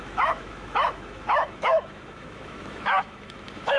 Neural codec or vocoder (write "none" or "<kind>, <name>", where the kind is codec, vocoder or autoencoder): autoencoder, DAC-VAE